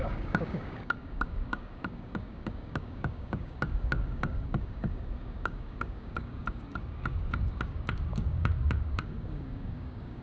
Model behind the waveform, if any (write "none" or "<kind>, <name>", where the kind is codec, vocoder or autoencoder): codec, DAC